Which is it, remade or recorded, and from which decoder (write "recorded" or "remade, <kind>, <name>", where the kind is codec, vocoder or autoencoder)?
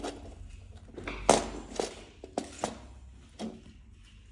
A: recorded